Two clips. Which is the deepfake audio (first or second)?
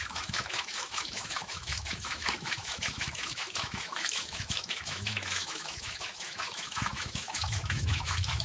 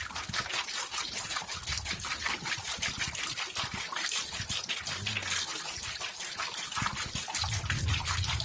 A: first